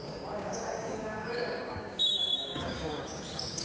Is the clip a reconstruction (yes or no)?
yes